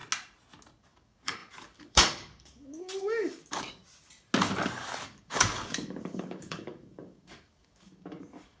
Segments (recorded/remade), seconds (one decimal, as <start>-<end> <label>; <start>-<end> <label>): 0.0-0.8 recorded; 0.8-3.8 remade; 3.8-5.0 recorded; 5.0-8.6 remade